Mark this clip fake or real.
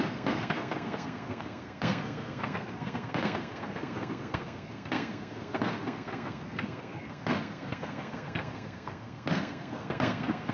fake